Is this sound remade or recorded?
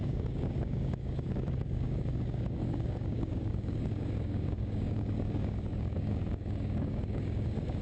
remade